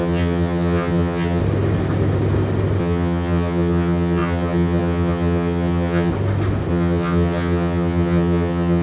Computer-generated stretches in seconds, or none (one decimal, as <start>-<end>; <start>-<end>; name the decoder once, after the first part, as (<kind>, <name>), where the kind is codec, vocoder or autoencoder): 0.0-1.4 (vocoder, HiFi-GAN); 2.8-6.1; 6.7-8.8